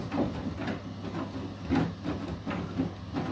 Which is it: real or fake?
real